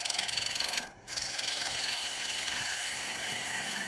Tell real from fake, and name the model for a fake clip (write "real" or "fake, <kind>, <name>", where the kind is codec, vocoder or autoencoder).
fake, codec, SNAC